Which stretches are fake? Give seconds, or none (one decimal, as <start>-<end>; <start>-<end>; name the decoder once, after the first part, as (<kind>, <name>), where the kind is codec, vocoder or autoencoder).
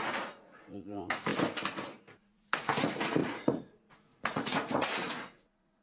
0.0-1.3 (vocoder, Vocos); 2.2-5.8